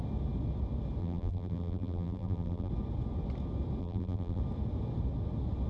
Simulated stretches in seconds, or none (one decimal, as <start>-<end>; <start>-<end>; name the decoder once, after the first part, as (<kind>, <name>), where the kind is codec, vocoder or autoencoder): 1.0-2.7 (vocoder, BigVGAN v2); 3.8-4.4